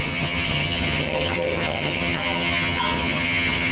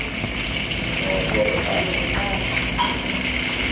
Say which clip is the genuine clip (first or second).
second